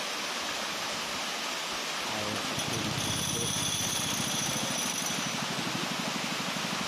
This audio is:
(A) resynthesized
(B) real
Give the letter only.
B